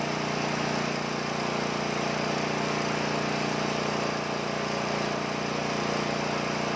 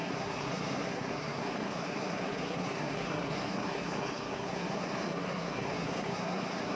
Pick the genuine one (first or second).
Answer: first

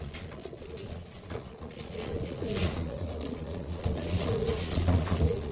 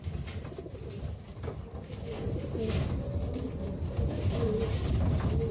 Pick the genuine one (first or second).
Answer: second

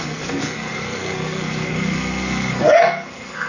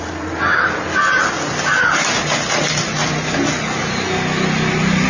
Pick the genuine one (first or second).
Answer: second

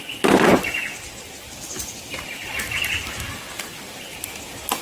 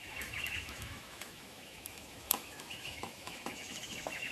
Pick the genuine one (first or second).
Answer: first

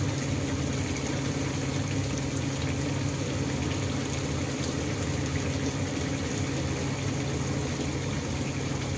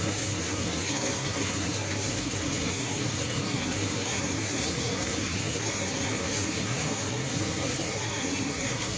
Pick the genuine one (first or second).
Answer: first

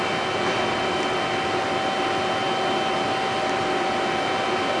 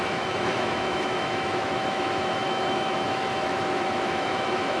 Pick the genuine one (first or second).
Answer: first